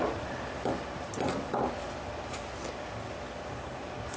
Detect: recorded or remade recorded